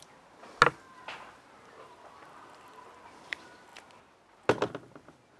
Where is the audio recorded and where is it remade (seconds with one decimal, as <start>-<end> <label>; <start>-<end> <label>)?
0.0-5.4 recorded